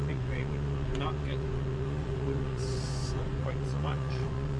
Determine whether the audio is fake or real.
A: fake